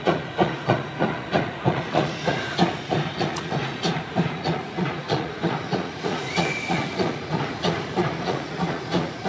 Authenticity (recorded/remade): remade